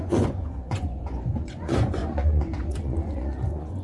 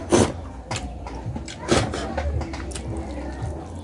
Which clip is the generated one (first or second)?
first